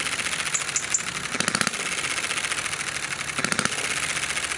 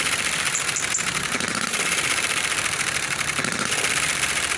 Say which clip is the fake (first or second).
second